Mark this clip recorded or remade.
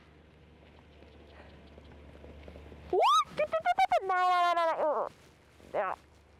recorded